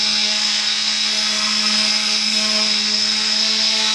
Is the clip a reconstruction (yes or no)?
yes